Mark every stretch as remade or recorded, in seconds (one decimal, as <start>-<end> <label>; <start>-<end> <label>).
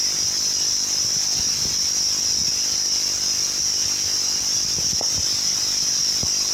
0.0-6.5 recorded